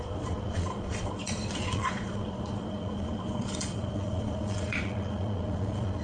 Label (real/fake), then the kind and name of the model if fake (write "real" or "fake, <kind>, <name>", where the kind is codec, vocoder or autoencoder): fake, vocoder, Vocos